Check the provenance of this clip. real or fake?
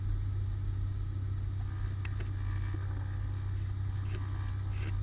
real